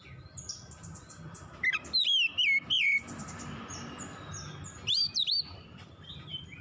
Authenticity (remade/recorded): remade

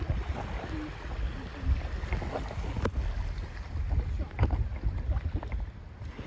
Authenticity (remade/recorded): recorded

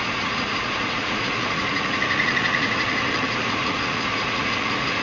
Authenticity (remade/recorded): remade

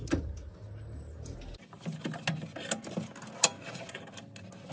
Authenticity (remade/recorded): recorded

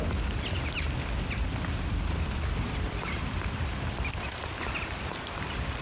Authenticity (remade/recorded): remade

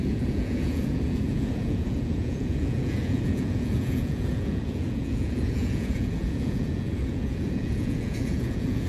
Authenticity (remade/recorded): remade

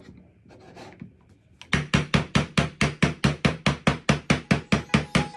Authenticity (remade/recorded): recorded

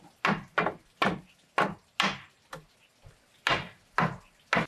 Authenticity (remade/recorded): recorded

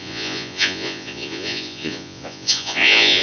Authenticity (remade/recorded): remade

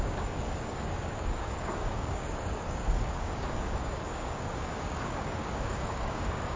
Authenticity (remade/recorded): remade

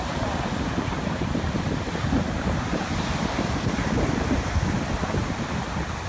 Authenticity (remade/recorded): remade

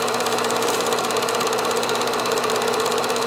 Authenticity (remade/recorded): remade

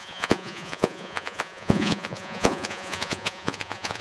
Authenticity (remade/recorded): remade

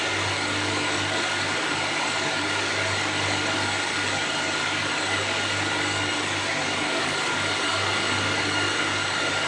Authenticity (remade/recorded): remade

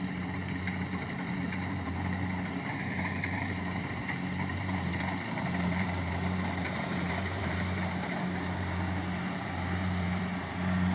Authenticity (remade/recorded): remade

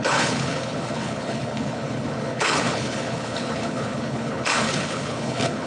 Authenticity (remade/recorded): remade